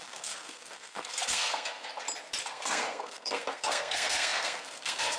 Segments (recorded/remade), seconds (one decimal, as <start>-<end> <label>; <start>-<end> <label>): 0.0-1.9 remade; 1.9-2.4 recorded; 2.4-5.2 remade